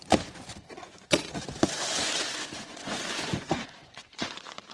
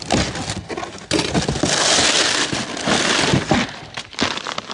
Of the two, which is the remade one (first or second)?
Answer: first